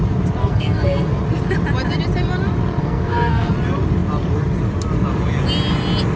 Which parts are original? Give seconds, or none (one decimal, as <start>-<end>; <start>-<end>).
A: 0.0-0.4; 1.2-2.8; 3.5-6.2